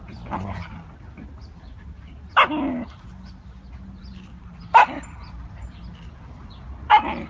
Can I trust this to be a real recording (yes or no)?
yes